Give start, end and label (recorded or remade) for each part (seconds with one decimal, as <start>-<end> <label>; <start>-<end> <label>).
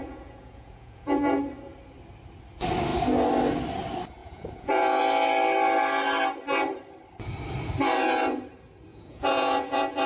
0.0-1.4 remade; 1.4-4.2 recorded; 4.2-5.0 remade; 5.0-8.9 recorded; 8.9-10.1 remade